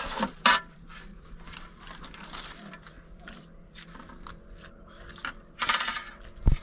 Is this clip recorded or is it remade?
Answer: remade